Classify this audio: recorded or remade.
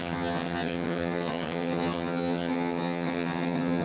remade